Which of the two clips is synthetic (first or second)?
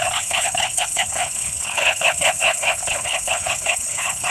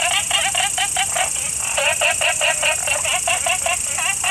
first